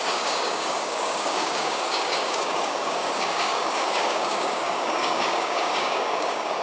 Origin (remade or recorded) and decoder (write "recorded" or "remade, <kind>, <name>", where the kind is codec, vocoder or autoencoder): remade, codec, DAC